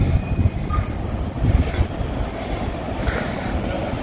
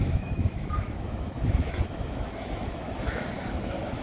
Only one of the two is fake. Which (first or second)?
second